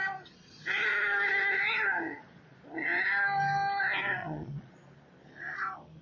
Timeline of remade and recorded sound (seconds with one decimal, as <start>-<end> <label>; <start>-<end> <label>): 0.0-4.2 recorded; 4.2-4.8 remade; 4.8-6.0 recorded